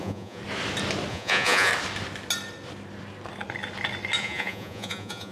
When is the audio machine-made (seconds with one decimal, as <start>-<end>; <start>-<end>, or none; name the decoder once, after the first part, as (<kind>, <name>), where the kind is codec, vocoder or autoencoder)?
0.0-0.4 (vocoder, Vocos); 1.1-1.7; 4.2-5.3